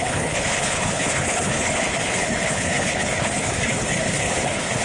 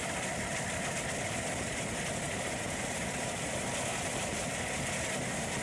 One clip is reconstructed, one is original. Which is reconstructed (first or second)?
first